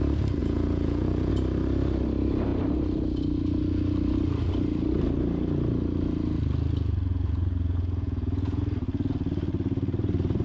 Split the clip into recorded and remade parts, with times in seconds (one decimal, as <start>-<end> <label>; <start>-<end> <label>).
0.0-0.4 recorded; 0.4-1.3 remade; 1.3-7.1 recorded; 7.1-8.6 remade; 8.6-10.4 recorded